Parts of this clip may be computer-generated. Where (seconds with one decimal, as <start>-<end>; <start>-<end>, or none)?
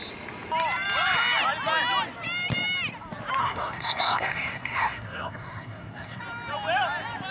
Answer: 3.4-6.2